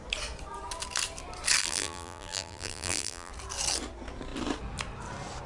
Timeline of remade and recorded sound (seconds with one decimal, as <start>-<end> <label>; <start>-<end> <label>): 0.0-1.6 recorded; 1.6-3.3 remade; 3.3-5.5 recorded